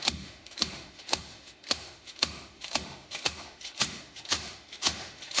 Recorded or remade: remade